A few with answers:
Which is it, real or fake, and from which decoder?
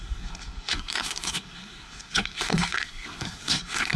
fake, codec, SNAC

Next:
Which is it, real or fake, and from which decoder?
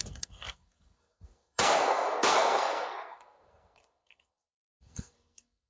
fake, codec, SNAC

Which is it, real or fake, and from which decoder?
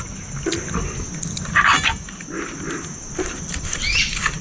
real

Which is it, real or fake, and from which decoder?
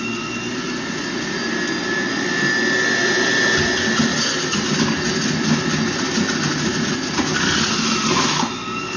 real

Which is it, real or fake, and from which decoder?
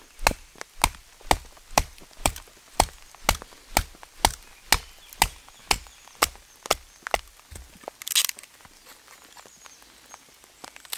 real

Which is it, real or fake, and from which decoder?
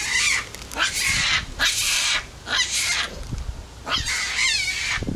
real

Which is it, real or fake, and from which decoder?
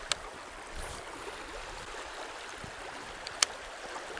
real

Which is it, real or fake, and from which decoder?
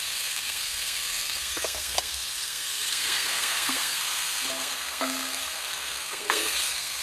fake, codec, SNAC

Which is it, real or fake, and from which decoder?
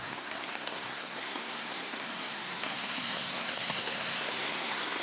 fake, codec, SNAC